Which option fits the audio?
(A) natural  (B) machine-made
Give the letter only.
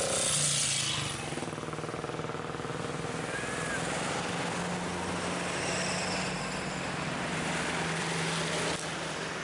A